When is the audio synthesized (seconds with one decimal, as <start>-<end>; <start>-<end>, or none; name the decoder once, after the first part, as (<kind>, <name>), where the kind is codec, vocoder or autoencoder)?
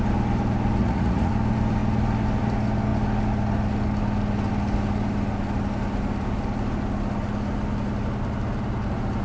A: 0.8-1.3 (vocoder, Vocos)